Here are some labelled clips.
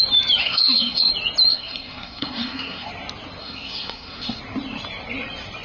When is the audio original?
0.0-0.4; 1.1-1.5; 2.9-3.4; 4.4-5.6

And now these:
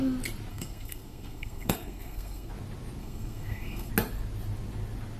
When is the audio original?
0.0-0.5; 2.5-3.0; 3.9-5.2